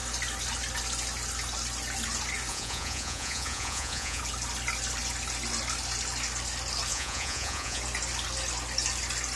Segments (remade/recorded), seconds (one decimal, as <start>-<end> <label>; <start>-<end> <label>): 0.0-2.5 recorded; 2.5-4.2 remade; 4.2-6.9 recorded; 6.9-7.8 remade; 7.8-9.4 recorded